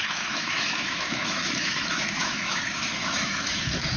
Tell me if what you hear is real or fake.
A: fake